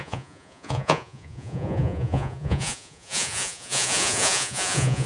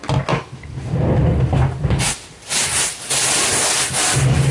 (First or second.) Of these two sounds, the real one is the second